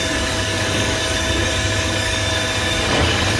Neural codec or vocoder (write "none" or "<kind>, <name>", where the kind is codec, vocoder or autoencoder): codec, DAC